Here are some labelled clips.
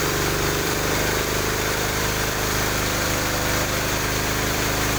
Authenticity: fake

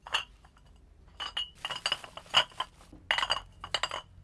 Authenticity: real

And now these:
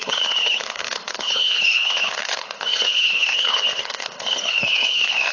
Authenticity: fake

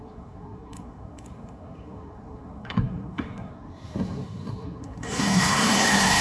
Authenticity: fake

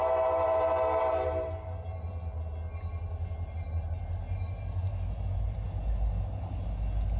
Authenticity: real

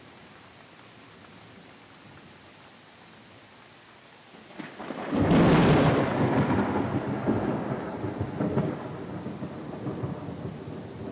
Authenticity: real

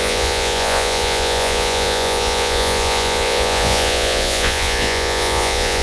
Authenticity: fake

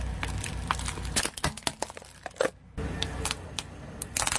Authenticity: real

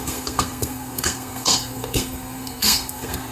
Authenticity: fake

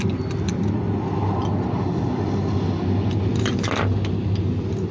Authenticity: real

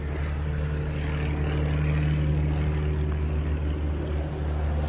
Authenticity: real